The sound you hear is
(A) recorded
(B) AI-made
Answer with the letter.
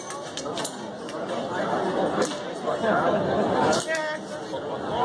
A